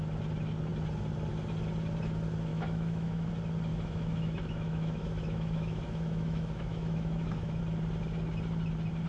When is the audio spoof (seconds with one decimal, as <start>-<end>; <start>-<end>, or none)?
2.5-3.3; 3.7-7.6

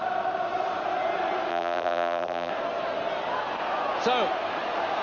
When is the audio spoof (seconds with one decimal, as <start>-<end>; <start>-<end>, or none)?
1.5-2.5